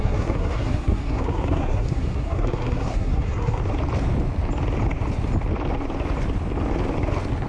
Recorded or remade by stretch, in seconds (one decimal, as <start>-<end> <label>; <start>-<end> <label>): 0.0-3.6 remade; 3.6-7.5 recorded